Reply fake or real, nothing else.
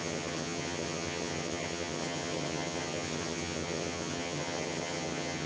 fake